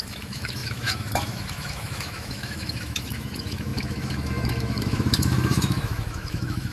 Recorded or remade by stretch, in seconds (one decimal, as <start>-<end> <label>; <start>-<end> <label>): 0.0-6.7 remade